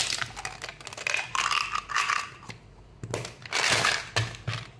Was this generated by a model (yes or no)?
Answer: no